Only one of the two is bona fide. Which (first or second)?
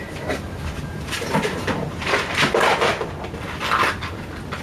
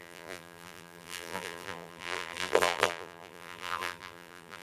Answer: first